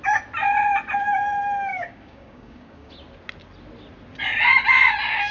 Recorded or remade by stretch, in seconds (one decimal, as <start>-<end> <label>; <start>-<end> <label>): 0.0-1.7 recorded; 1.7-2.9 remade; 2.9-5.3 recorded